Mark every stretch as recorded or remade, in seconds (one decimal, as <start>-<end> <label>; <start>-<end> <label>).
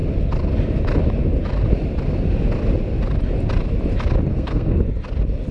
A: 0.0-4.3 recorded; 4.3-4.8 remade; 4.8-5.5 recorded